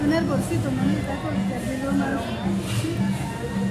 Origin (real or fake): real